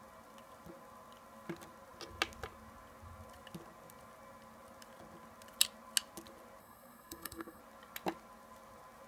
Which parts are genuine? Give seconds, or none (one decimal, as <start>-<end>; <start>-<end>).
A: 0.0-6.6; 7.6-9.1